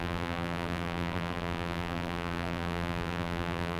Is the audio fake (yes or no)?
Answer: yes